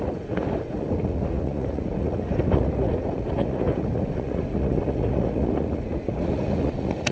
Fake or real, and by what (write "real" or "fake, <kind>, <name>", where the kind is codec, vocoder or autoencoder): fake, vocoder, Vocos